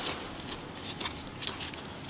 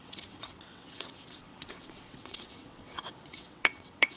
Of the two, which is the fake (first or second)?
second